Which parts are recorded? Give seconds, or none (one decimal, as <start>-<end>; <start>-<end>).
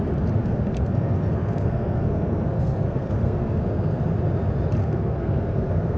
0.0-0.4; 4.0-4.8